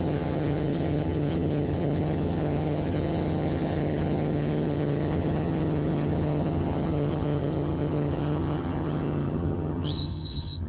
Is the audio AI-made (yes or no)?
yes